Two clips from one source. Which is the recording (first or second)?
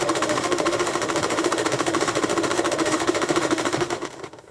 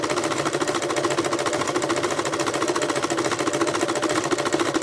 second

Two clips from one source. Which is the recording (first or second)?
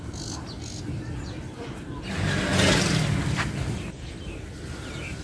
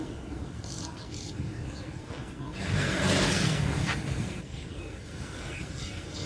first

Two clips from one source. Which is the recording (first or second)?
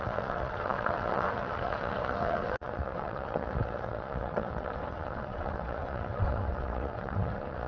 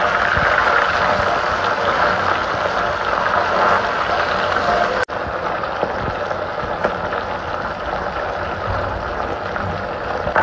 second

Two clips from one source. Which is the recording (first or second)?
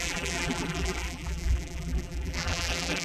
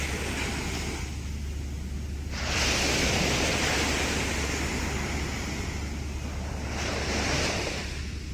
second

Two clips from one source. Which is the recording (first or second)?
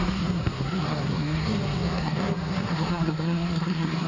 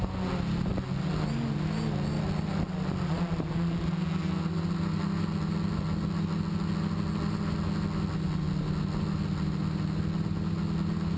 second